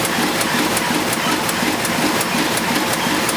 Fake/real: real